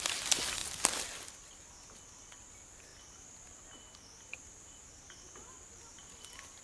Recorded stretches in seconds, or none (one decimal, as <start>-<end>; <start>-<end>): 0.0-6.6